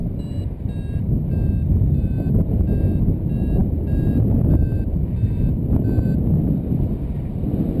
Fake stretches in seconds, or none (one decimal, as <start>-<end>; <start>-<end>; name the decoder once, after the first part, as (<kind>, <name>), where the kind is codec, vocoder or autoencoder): 0.0-0.6 (vocoder, BigVGAN v2); 3.6-7.3